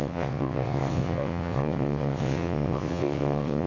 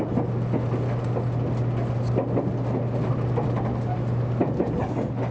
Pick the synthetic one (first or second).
first